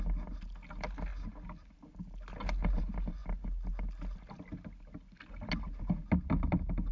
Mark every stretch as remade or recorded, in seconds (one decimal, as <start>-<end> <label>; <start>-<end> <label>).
0.0-6.9 recorded